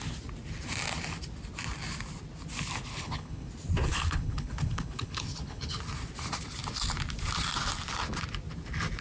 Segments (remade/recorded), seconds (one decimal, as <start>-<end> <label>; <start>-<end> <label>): 0.0-2.9 recorded; 2.9-3.5 remade; 3.5-3.9 recorded; 3.9-5.8 remade; 5.8-9.0 recorded